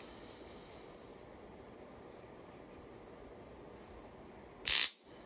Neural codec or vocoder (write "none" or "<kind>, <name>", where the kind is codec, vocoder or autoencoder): none